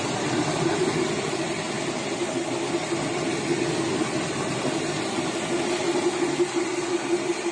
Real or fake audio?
real